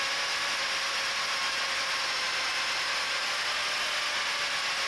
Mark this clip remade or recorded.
recorded